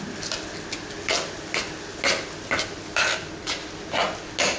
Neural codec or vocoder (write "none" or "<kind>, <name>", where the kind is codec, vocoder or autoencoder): none